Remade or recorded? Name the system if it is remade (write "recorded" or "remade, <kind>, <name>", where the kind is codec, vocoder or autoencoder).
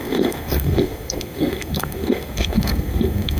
remade, codec, SNAC